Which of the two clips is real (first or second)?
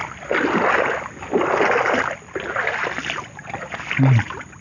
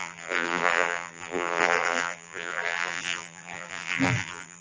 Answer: first